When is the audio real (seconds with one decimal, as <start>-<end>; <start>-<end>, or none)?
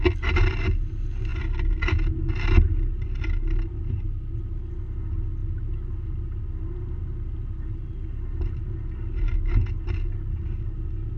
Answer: 0.0-11.2